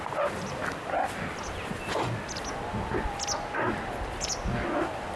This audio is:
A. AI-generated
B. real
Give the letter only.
B